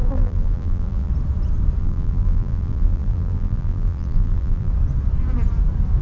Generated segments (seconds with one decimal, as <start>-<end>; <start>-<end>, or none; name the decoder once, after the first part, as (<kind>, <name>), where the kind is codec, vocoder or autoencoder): 0.0-1.1 (vocoder, BigVGAN v2); 1.8-4.7